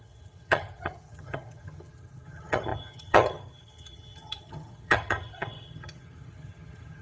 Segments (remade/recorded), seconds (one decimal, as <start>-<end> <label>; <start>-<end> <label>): 0.0-7.0 remade